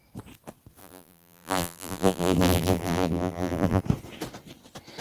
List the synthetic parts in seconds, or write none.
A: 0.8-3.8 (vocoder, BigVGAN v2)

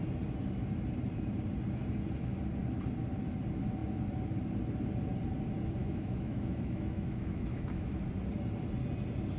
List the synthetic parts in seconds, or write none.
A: 5.8-8.0 (autoencoder, DAC-VAE)

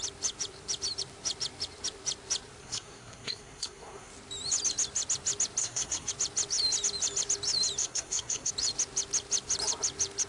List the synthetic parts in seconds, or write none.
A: 2.6-4.1 (codec, SNAC); 5.6-6.1; 7.8-8.5

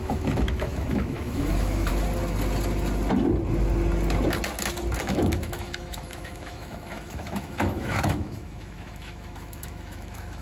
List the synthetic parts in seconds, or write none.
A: 0.0-1.9 (autoencoder, DAC-VAE); 5.0-10.4

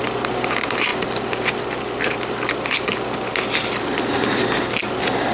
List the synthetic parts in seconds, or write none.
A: none